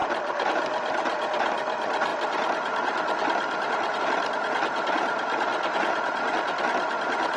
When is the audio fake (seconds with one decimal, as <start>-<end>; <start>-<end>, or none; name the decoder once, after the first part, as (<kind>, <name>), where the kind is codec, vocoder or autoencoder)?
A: 0.0-7.4 (vocoder, BigVGAN v2)